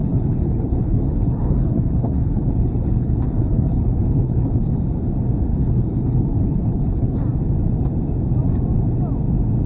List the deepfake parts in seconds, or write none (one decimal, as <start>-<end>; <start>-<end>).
0.0-4.8; 5.5-7.2

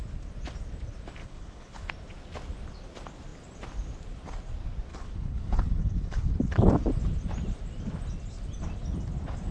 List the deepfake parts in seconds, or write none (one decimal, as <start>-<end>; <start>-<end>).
1.2-1.9; 4.9-6.7

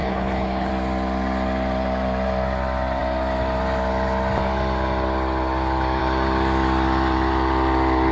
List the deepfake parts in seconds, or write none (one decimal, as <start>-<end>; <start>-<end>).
0.0-0.7

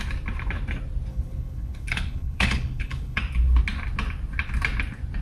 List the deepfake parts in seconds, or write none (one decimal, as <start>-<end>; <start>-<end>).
1.1-3.2

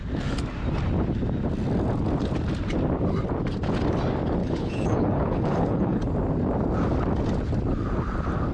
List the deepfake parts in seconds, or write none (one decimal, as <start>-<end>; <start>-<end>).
4.4-6.0

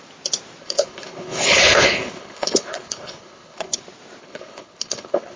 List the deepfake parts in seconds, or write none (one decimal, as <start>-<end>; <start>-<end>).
0.6-3.8; 4.2-5.4

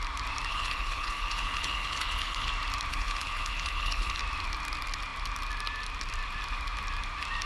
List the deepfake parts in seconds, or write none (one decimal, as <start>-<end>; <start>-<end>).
0.5-2.5; 2.9-4.2